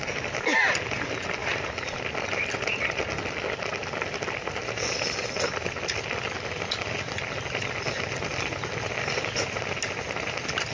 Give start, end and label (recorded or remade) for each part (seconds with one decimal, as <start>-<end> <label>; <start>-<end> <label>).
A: 0.0-1.4 recorded; 1.4-3.4 remade; 3.4-3.8 recorded; 3.8-4.6 remade; 4.6-10.7 recorded

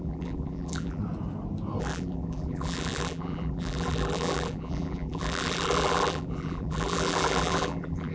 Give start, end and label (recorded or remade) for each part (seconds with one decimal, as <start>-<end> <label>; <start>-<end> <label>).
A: 0.0-1.0 remade; 1.0-1.8 recorded; 1.8-8.1 remade

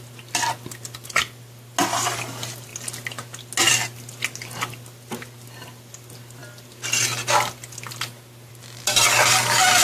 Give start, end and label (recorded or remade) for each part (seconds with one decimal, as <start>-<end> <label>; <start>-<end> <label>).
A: 0.0-9.8 recorded

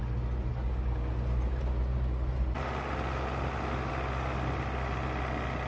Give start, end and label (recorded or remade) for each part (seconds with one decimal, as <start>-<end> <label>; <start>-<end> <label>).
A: 0.0-5.7 recorded

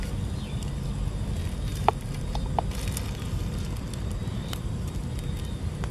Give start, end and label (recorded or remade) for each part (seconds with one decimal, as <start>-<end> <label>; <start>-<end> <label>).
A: 0.0-1.7 recorded; 1.7-2.3 remade; 2.3-4.2 recorded; 4.2-4.9 remade; 4.9-5.9 recorded

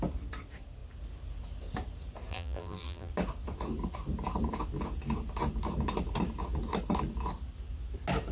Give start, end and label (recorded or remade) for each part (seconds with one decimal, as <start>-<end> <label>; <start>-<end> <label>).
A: 0.0-2.3 recorded; 2.3-3.1 remade; 3.1-8.3 recorded